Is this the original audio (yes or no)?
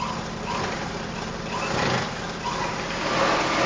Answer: yes